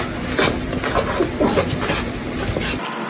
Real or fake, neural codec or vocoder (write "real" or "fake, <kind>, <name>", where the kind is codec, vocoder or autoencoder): real